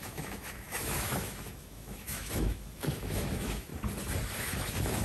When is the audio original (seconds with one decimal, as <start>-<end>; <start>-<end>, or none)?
3.7-4.4